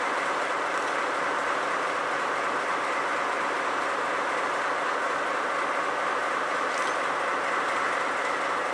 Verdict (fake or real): real